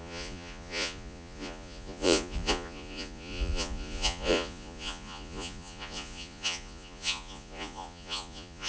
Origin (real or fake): fake